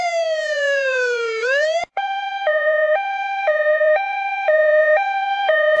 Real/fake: fake